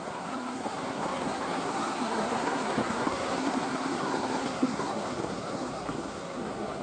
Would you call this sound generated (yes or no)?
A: yes